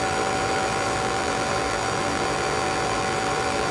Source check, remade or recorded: remade